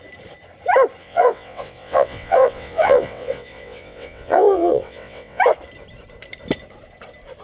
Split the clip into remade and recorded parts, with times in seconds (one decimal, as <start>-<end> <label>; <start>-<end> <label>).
0.0-1.0 recorded; 1.0-5.4 remade; 5.4-7.4 recorded